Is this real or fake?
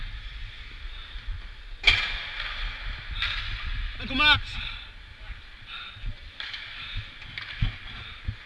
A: real